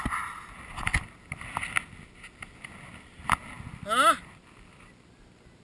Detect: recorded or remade recorded